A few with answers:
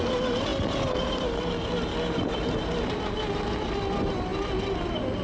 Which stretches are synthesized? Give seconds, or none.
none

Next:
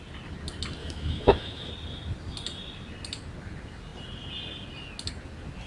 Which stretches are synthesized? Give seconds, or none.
0.8-1.7 (autoencoder, DAC-VAE)